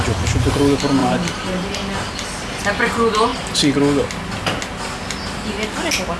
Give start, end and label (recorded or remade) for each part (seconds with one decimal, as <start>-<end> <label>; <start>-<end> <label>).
0.0-1.0 recorded; 1.0-2.1 remade; 2.1-6.2 recorded